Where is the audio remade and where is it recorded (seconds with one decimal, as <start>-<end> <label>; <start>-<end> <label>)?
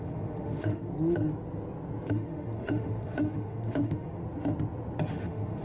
0.0-0.9 remade; 0.9-2.1 recorded; 2.1-4.2 remade; 4.2-5.1 recorded; 5.1-5.6 remade